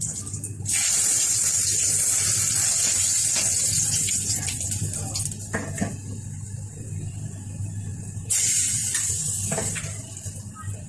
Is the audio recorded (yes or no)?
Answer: yes